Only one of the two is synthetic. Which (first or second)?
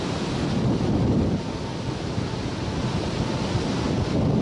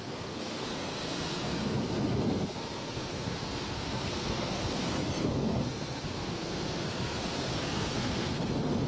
second